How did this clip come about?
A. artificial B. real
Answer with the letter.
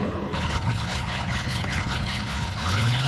A